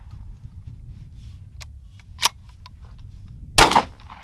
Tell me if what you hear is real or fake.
real